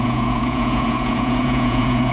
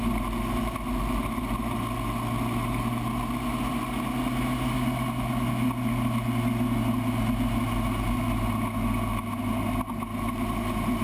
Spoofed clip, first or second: first